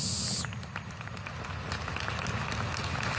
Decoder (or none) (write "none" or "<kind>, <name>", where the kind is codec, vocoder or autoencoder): none